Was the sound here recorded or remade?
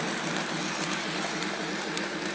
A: recorded